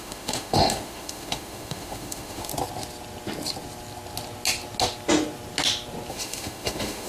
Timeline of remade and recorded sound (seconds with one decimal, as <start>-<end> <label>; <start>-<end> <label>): 0.0-2.5 remade; 2.5-6.1 recorded; 6.1-7.1 remade